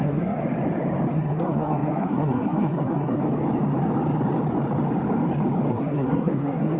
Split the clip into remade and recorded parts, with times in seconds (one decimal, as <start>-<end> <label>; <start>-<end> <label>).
0.0-0.4 remade; 0.4-1.1 recorded; 1.1-3.2 remade; 3.2-5.7 recorded; 5.7-6.8 remade